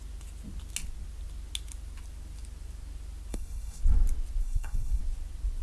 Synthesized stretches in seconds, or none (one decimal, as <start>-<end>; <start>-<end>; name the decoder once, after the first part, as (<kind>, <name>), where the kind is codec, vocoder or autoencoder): 3.3-3.8 (codec, SNAC); 4.4-5.0